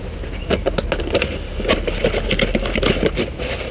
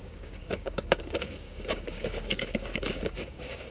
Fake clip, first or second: second